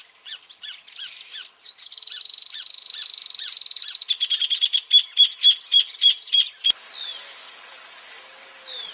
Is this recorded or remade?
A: recorded